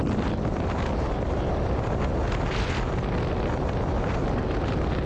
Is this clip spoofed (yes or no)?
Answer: no